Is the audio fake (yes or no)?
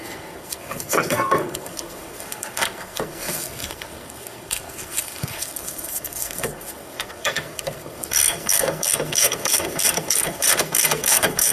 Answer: yes